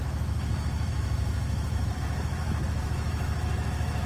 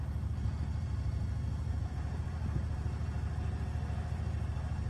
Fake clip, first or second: first